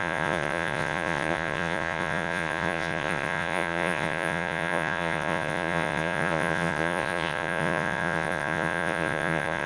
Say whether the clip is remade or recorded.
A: remade